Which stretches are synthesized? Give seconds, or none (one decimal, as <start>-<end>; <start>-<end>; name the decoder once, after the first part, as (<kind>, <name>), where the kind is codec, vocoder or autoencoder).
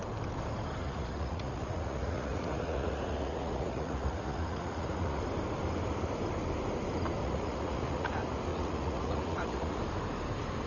0.8-5.2 (vocoder, Vocos); 7.2-8.1; 8.5-9.8